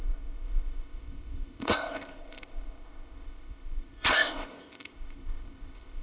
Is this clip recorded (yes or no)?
no